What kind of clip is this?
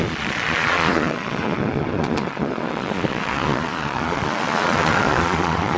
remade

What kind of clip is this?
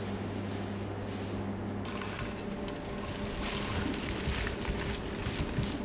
recorded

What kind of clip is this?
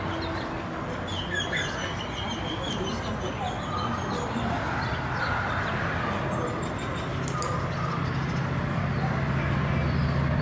recorded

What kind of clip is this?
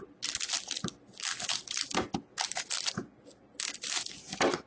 recorded